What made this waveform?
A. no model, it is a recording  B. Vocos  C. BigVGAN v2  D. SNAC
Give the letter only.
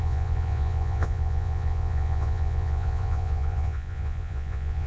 B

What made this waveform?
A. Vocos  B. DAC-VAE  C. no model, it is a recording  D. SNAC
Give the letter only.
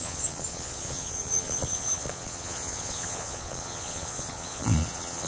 A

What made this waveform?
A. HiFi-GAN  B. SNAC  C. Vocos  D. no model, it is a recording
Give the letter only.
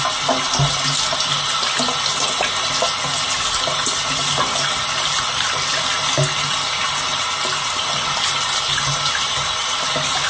D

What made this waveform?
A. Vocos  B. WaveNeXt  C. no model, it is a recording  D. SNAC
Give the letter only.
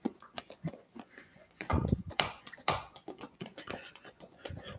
A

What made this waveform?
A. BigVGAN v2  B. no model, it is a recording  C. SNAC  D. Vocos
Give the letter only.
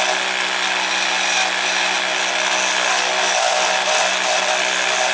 B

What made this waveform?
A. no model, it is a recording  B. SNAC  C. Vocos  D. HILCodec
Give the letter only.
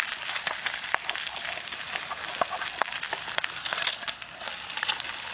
A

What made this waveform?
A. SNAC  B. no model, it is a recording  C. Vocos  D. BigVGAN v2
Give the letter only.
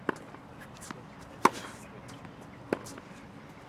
B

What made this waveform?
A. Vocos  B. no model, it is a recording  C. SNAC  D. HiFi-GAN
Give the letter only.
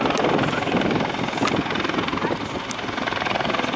B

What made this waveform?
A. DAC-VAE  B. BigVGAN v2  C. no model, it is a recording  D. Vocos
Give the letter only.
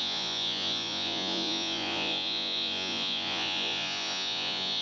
D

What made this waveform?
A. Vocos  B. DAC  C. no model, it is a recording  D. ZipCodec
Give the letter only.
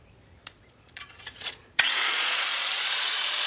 A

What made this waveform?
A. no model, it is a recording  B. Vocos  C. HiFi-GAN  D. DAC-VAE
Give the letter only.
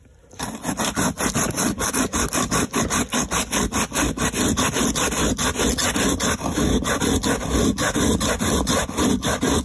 A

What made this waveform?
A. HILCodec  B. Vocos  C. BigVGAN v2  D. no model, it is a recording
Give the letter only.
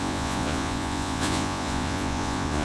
B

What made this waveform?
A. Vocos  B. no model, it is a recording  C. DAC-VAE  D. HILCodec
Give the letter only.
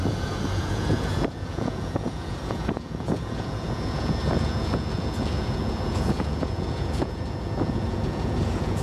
A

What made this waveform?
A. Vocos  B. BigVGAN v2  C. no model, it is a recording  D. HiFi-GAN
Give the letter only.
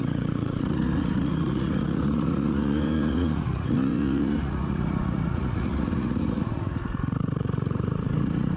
A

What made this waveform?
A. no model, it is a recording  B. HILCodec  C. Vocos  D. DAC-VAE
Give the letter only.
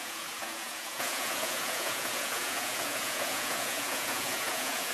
C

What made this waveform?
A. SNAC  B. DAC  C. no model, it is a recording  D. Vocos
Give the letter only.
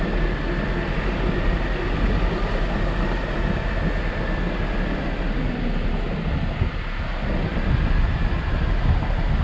C